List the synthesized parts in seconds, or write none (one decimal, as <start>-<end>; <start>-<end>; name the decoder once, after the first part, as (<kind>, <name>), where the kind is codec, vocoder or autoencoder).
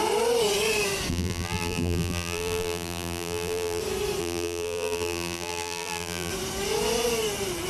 1.1-3.8 (vocoder, BigVGAN v2); 4.2-6.3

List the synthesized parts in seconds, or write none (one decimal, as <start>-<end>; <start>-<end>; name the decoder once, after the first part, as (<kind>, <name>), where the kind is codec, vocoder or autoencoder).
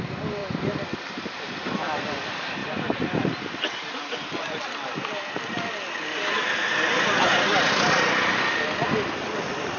2.6-4.9 (vocoder, BigVGAN v2)